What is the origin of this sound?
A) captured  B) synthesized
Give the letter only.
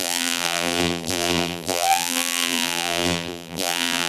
B